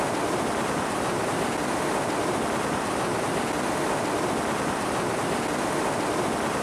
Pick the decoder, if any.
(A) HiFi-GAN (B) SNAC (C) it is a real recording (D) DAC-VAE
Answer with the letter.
C